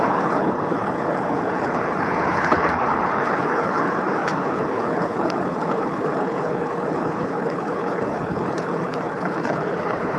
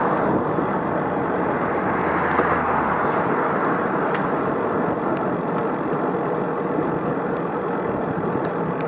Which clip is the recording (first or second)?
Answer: second